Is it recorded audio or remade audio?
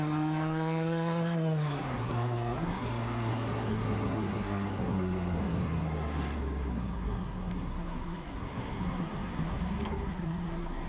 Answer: remade